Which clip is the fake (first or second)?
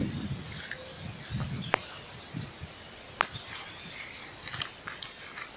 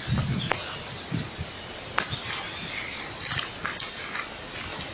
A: first